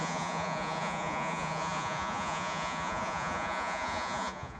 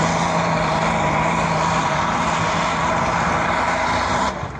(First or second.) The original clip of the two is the second